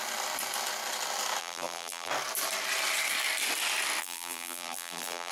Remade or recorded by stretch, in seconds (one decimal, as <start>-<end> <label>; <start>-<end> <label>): 0.0-1.4 recorded; 1.4-2.1 remade; 2.1-4.0 recorded; 4.0-5.3 remade